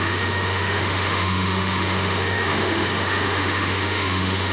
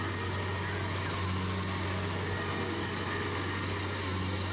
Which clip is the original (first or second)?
second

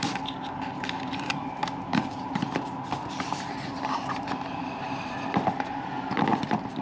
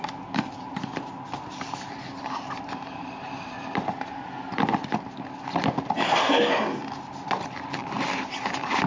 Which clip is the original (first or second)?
second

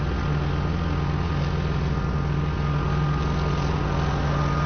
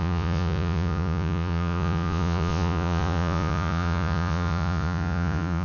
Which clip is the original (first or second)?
first